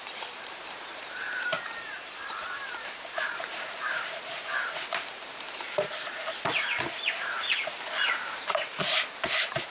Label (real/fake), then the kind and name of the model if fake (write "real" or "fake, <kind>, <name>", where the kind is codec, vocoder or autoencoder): fake, vocoder, BigVGAN v2